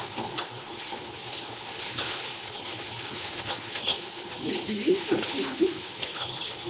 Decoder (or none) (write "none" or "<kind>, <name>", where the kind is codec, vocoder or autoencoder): codec, HILCodec